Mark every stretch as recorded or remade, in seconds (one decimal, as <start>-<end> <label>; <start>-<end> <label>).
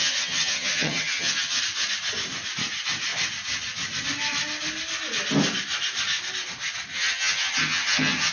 0.0-1.6 remade; 1.6-6.9 recorded; 6.9-8.3 remade